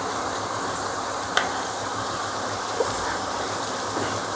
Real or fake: fake